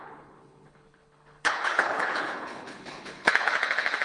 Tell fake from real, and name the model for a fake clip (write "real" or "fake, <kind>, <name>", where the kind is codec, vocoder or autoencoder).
fake, codec, HILCodec